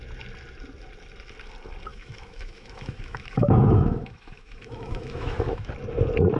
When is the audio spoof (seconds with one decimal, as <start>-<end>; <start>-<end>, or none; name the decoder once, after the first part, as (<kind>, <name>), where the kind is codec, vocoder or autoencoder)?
1.9-5.7 (autoencoder, DAC-VAE)